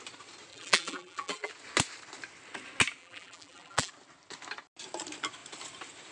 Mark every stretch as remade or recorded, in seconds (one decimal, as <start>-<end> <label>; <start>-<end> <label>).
0.0-0.5 recorded; 0.5-1.5 remade; 1.5-3.0 recorded; 3.0-3.9 remade; 3.9-6.1 recorded